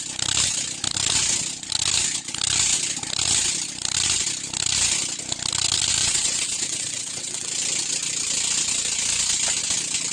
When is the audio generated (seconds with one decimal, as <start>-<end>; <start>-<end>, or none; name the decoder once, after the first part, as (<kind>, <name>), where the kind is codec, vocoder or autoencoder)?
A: 6.0-7.5 (vocoder, WaveNeXt)